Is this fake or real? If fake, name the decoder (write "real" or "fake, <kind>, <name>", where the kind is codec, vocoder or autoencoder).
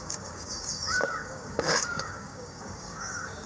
fake, codec, DAC